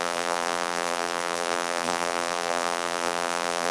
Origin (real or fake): fake